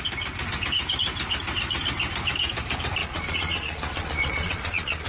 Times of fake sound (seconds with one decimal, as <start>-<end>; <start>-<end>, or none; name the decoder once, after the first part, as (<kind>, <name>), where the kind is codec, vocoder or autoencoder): 3.0-5.1 (vocoder, Vocos)